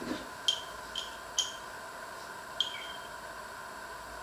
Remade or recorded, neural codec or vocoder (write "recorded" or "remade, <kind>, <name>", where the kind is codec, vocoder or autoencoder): recorded